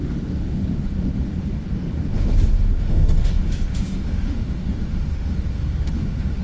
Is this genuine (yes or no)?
no